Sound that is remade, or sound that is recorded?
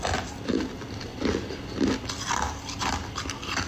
recorded